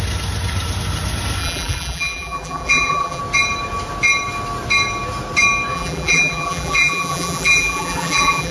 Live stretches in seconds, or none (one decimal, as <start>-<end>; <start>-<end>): 0.0-1.4; 3.2-5.7